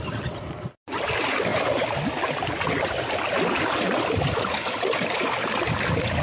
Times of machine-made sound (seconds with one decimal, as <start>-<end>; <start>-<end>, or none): none